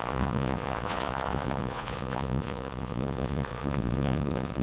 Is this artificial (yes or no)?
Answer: yes